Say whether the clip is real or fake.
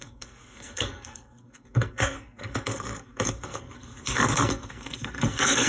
fake